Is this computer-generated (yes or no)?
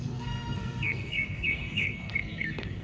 yes